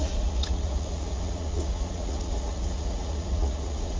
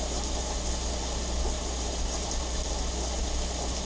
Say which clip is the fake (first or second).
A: first